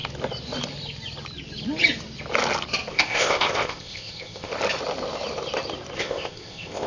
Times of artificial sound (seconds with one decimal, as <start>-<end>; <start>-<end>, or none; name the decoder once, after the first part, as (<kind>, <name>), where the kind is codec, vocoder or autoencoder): 2.9-4.5 (codec, ZipCodec); 6.0-6.9